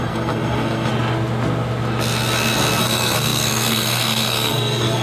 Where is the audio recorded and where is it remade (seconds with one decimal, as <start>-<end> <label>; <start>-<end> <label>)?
0.0-0.9 remade; 0.9-2.8 recorded; 2.8-5.0 remade